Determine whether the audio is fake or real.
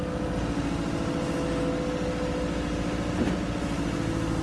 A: real